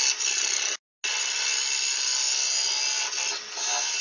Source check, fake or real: real